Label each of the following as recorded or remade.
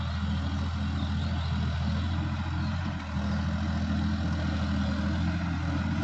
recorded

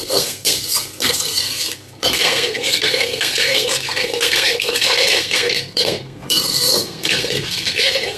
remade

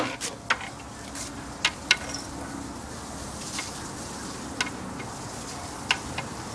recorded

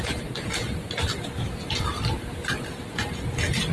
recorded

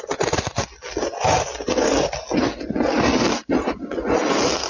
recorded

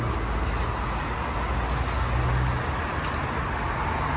recorded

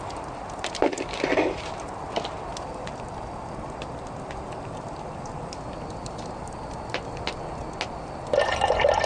recorded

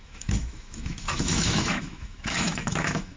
remade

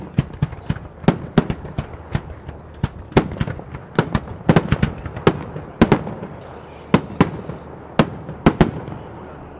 recorded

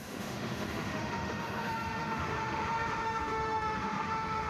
remade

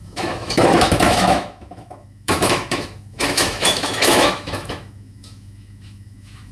remade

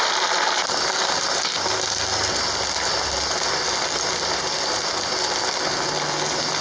recorded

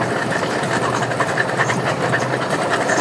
remade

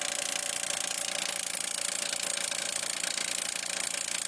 recorded